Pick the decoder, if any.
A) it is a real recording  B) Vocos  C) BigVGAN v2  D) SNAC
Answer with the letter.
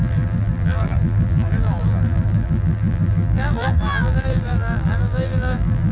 C